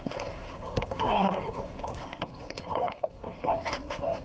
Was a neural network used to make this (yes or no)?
yes